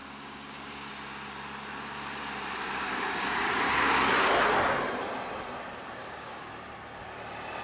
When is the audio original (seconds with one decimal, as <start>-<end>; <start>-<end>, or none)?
0.9-2.7; 4.1-6.0; 6.5-7.6